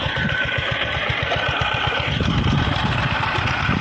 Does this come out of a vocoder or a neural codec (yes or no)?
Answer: no